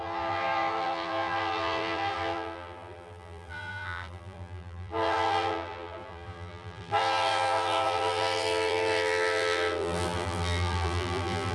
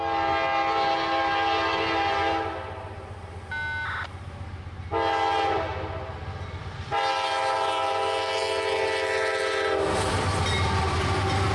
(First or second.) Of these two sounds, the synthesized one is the first